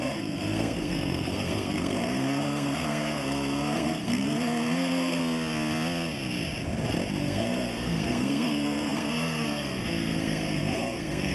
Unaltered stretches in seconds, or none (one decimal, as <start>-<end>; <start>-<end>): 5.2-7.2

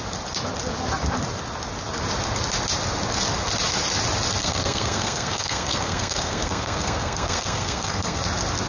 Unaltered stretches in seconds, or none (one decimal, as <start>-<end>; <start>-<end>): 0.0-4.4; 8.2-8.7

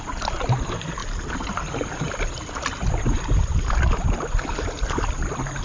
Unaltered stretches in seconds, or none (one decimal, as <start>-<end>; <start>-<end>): 0.0-5.6

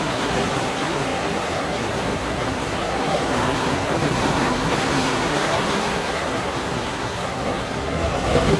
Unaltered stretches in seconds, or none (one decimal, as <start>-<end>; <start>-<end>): none

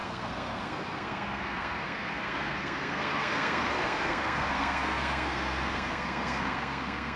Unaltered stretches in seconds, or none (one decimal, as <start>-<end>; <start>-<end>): none

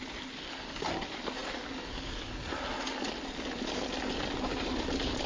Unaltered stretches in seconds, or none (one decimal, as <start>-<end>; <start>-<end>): 0.0-5.3

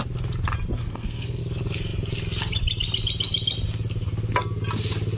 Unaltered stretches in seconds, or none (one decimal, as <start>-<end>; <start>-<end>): 0.0-0.8; 1.4-5.2